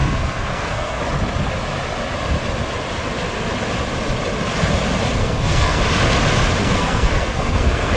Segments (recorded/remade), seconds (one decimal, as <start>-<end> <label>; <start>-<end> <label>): 0.0-1.0 remade; 1.0-5.2 recorded; 5.2-5.8 remade; 5.8-6.6 recorded; 6.6-8.0 remade